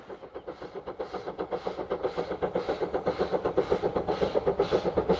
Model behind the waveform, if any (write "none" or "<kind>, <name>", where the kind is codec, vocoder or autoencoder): none